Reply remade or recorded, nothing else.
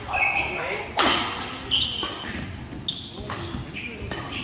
recorded